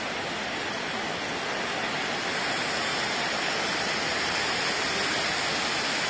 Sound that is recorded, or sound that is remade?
recorded